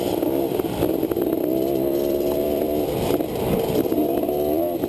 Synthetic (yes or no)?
yes